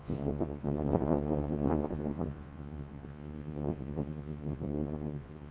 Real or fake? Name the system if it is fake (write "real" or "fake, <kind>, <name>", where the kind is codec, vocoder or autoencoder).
fake, vocoder, Vocos